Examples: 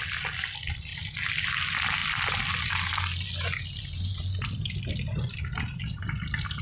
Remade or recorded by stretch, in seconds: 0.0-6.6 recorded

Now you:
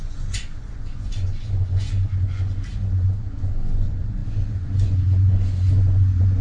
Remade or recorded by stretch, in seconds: 0.0-6.4 remade

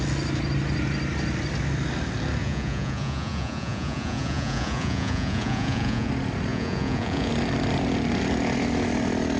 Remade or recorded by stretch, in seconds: 0.0-2.4 recorded; 2.4-6.1 remade; 6.1-6.5 recorded; 6.5-7.3 remade; 7.3-9.4 recorded

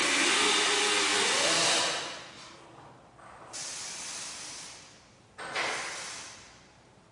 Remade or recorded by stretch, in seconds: 0.0-7.1 recorded

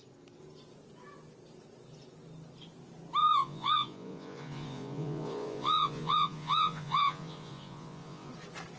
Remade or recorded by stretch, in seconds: 0.0-3.2 recorded; 3.2-8.3 remade; 8.3-8.8 recorded

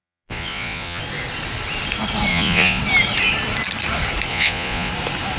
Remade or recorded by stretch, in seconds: 0.0-1.0 remade; 1.0-2.3 recorded; 2.3-2.8 remade; 2.8-4.3 recorded; 4.3-4.9 remade; 4.9-5.4 recorded

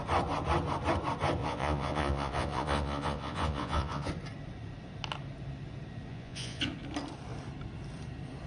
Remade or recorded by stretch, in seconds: 0.0-1.4 recorded; 1.4-4.1 remade; 4.1-6.1 recorded; 6.1-6.7 remade; 6.7-8.5 recorded

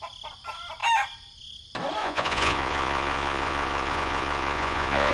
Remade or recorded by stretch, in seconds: 0.0-2.0 recorded; 2.0-5.1 remade